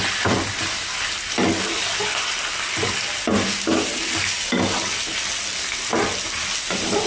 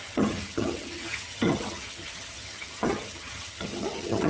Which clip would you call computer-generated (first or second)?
second